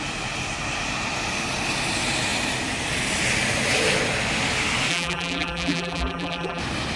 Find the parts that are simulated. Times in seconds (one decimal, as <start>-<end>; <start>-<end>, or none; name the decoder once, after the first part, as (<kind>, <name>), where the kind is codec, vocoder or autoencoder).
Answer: 4.9-6.6 (vocoder, BigVGAN v2)